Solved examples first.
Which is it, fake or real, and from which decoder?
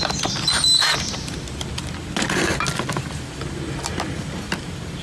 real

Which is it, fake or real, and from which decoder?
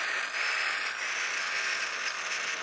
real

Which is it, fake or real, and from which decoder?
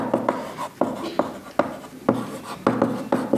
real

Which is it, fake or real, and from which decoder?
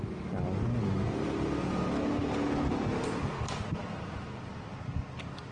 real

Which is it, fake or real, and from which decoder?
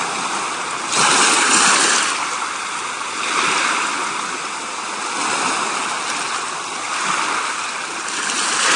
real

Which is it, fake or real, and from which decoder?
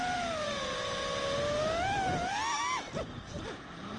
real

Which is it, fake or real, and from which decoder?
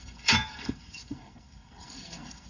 fake, codec, SNAC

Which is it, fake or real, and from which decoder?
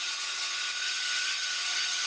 fake, vocoder, HiFi-GAN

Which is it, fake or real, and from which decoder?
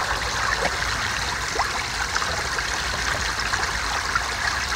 real